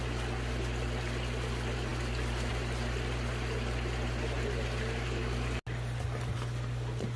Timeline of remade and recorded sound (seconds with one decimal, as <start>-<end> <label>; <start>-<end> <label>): 0.0-7.2 recorded